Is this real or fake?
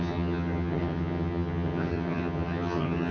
fake